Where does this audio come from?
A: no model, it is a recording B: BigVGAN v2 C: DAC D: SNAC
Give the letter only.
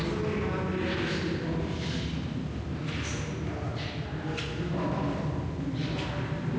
A